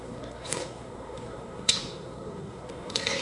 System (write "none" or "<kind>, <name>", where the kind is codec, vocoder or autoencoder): codec, SNAC